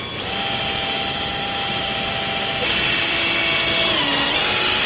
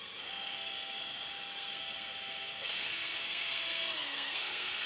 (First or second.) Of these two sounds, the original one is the first